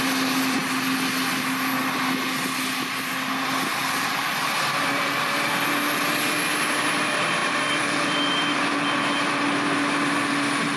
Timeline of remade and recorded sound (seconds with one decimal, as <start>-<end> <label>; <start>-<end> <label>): 0.0-3.8 recorded; 3.8-5.3 remade; 5.3-7.4 recorded; 7.4-8.6 remade; 8.6-10.8 recorded